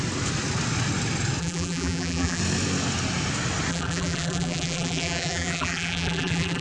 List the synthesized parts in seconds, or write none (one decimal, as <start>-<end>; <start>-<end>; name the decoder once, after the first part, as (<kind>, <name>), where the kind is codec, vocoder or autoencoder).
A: 1.4-2.4 (vocoder, BigVGAN v2); 3.7-6.6